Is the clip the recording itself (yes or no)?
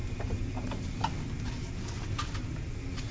yes